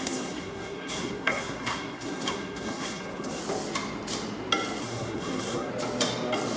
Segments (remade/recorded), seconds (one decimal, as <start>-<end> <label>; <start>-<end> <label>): 0.0-3.4 remade; 3.4-4.8 recorded; 4.8-5.7 remade; 5.7-6.6 recorded